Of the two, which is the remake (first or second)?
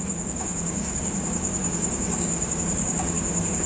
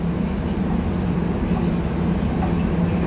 first